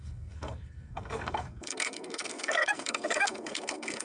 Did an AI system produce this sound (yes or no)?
yes